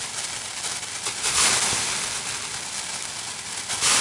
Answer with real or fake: real